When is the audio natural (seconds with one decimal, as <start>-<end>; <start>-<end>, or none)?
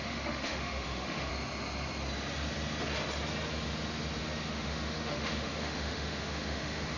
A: 1.3-4.2